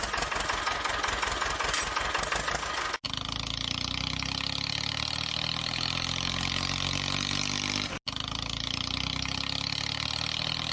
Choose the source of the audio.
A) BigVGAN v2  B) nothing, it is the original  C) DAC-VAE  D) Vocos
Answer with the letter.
B